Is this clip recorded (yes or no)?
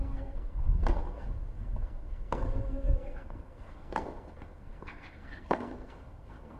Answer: no